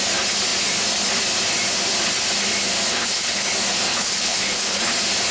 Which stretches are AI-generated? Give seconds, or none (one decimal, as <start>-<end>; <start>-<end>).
2.9-3.5; 3.9-4.8